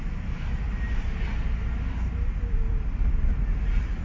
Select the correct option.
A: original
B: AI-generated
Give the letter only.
A